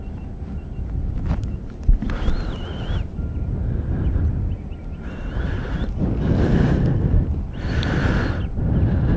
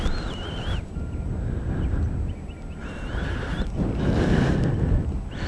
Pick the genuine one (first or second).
second